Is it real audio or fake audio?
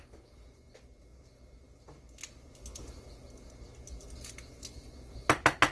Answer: real